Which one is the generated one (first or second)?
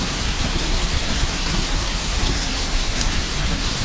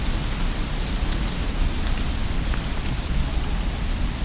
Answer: first